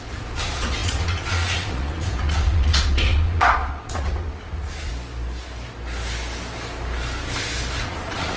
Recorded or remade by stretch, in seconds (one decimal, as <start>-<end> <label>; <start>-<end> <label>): 0.0-4.9 remade; 4.9-7.8 recorded; 7.8-8.4 remade